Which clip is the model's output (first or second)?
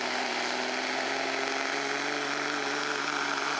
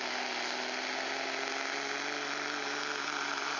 first